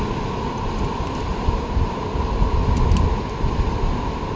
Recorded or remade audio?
recorded